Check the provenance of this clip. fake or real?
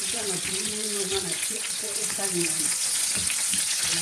fake